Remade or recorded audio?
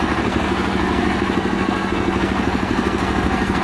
remade